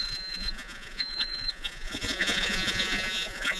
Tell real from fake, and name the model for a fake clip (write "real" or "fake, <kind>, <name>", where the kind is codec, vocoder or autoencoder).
fake, vocoder, Vocos